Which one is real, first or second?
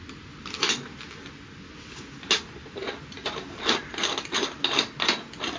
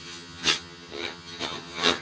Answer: first